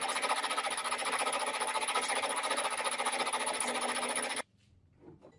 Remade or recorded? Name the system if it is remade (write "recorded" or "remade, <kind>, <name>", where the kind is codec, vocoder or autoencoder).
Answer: recorded